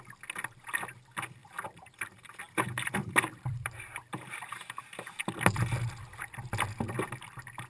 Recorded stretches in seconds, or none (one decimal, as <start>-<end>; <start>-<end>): 0.0-1.4; 2.4-3.0; 4.8-7.7